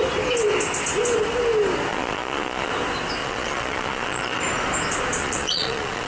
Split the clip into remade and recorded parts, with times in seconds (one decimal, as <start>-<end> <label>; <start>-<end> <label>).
0.0-1.9 recorded; 1.9-2.7 remade; 2.7-3.2 recorded; 3.2-4.4 remade; 4.4-5.2 recorded; 5.2-6.1 remade